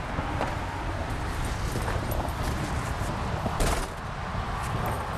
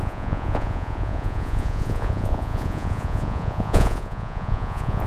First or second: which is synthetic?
second